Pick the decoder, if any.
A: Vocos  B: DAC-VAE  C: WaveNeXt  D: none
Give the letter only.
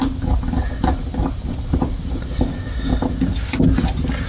D